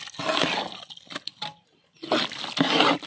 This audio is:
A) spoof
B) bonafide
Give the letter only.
B